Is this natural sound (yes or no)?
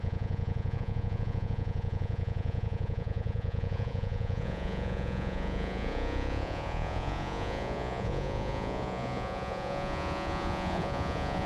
no